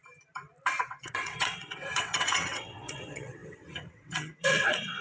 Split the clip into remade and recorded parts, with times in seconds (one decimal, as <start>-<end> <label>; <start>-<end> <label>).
0.0-0.8 recorded; 0.8-5.0 remade